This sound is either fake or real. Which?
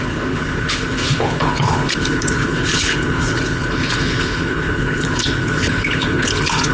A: fake